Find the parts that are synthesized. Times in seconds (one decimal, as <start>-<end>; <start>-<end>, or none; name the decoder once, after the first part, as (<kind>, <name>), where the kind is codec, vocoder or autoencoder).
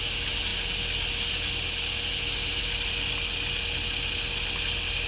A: none